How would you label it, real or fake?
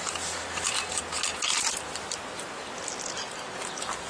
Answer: real